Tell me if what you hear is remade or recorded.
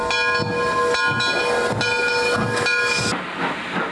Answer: recorded